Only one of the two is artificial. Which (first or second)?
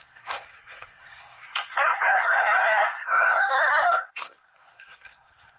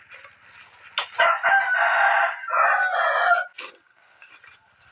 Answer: first